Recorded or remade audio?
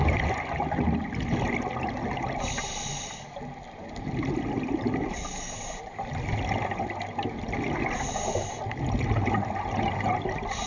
recorded